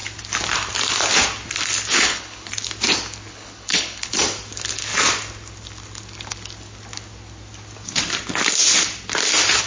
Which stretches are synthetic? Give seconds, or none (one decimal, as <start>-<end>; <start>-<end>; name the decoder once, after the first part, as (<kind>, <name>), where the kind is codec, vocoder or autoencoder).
1.9-2.5 (codec, HILCodec); 3.3-4.1